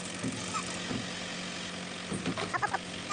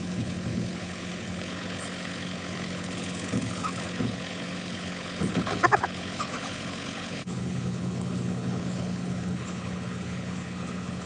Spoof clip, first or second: second